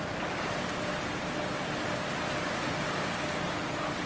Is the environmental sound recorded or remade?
recorded